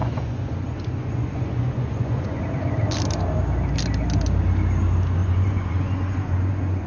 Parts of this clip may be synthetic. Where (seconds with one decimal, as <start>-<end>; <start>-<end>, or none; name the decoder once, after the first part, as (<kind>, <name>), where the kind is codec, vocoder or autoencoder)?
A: 0.0-2.4 (vocoder, Vocos); 5.2-6.9